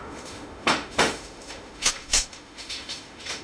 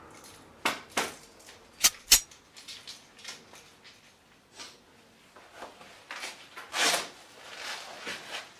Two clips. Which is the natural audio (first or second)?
second